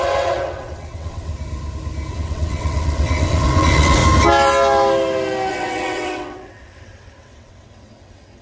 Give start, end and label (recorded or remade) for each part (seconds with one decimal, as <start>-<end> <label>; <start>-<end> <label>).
0.0-1.3 remade; 1.3-2.1 recorded; 2.1-4.0 remade; 4.0-5.5 recorded; 5.5-8.4 remade